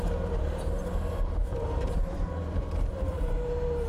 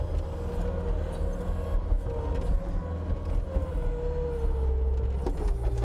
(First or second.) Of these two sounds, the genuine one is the second